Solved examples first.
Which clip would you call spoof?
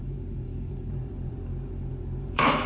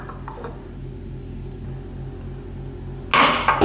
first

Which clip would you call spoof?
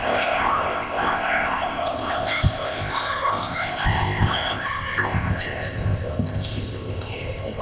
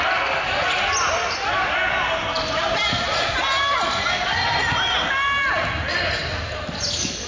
first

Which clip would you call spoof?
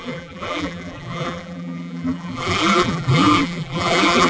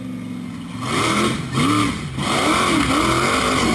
first